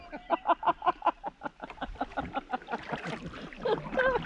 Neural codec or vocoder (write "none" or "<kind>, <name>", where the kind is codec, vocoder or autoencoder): none